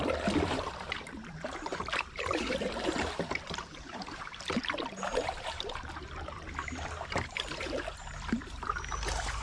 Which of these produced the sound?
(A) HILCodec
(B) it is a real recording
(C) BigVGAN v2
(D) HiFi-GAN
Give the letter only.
C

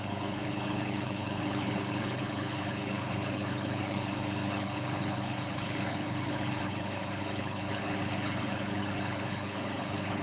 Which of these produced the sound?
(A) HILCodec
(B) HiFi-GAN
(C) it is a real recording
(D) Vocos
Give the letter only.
A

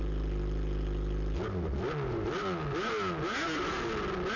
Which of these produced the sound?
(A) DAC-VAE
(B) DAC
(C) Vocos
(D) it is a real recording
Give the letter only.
D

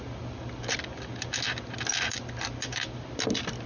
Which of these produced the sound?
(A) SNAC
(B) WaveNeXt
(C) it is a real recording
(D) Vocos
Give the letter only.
C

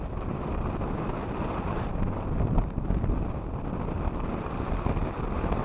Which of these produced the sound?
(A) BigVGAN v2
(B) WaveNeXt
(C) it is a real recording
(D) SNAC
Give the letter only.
C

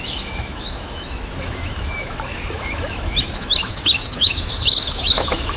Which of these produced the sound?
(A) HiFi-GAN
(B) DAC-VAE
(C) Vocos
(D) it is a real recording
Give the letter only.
B